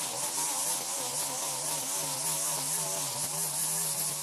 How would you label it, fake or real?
real